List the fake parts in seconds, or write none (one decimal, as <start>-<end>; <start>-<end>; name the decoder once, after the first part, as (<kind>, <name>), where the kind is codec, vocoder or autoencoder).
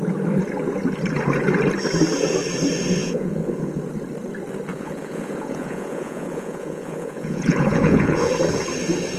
3.0-3.8 (vocoder, Vocos); 4.7-8.3